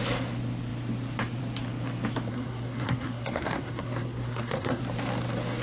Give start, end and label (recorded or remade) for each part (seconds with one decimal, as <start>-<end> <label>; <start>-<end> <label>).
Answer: 0.0-2.3 recorded; 2.3-4.8 remade; 4.8-5.6 recorded